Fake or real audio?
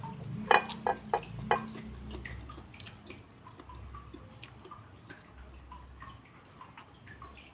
real